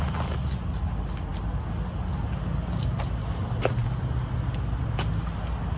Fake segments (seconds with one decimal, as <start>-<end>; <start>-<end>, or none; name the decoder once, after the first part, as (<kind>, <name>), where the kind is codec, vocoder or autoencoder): none